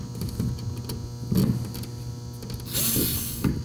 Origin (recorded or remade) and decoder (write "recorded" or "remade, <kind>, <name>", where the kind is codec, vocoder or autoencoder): recorded